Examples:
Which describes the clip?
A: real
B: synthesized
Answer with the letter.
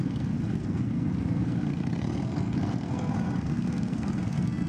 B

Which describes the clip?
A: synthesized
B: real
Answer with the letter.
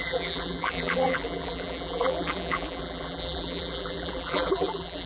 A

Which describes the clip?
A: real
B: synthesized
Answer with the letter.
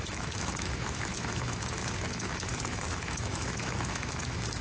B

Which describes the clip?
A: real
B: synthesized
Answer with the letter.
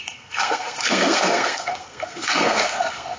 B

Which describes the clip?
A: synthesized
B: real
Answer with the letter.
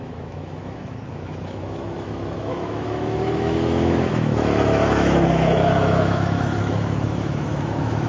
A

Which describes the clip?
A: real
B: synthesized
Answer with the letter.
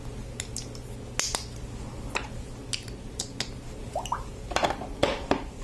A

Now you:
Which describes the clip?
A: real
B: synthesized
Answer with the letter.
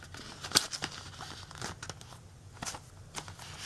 A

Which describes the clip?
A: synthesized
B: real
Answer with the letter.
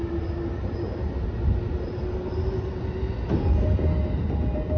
B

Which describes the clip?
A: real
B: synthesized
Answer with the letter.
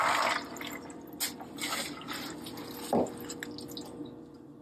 A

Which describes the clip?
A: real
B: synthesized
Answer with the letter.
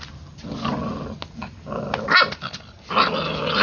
A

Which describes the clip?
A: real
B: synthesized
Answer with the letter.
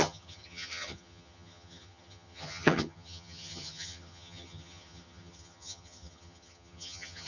B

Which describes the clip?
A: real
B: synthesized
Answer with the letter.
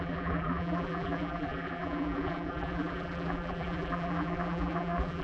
B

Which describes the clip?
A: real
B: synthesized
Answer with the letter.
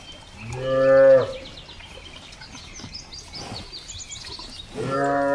A